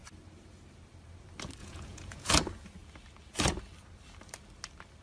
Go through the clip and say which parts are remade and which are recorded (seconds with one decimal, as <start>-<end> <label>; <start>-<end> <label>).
0.0-1.6 recorded; 1.6-2.3 remade; 2.3-5.0 recorded